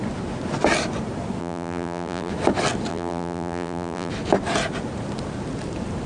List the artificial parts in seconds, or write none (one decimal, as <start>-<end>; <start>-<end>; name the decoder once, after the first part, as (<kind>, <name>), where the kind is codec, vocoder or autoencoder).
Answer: 1.4-2.3 (vocoder, BigVGAN v2); 2.9-4.1